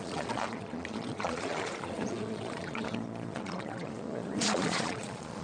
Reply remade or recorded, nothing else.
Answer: remade